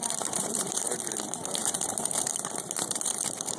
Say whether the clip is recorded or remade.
remade